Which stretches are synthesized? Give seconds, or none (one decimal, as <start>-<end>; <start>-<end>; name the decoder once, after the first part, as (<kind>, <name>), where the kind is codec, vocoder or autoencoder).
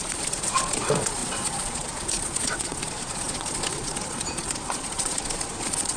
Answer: 0.0-6.0 (vocoder, Vocos)